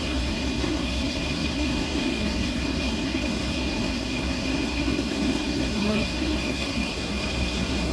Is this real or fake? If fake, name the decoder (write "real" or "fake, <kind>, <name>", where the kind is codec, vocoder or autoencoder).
fake, codec, SNAC